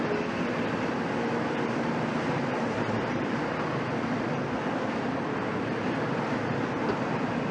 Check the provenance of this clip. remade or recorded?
recorded